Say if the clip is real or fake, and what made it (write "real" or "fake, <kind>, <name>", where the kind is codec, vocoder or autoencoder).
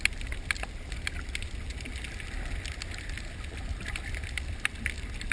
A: real